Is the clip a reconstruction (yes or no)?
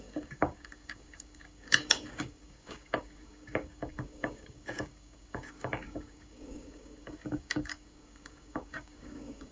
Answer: yes